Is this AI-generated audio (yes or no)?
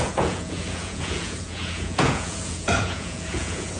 yes